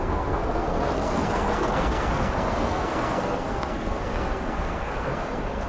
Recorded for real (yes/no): no